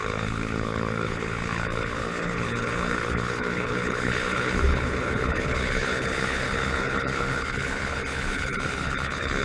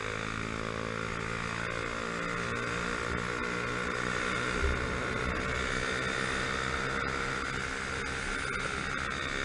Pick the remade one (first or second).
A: first